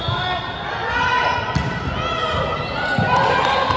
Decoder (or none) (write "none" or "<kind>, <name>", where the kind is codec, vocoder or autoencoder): none